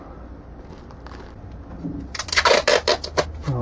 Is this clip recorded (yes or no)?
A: yes